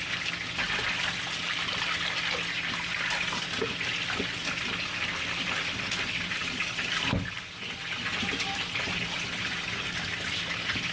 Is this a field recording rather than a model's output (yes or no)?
yes